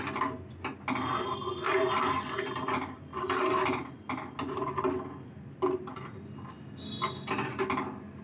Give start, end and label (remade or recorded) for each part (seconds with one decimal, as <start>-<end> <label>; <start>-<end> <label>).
0.0-8.2 recorded